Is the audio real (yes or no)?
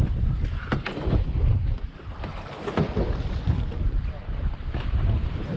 yes